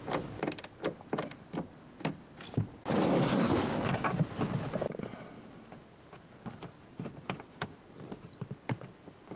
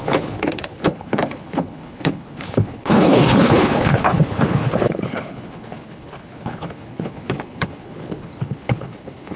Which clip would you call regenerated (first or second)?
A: second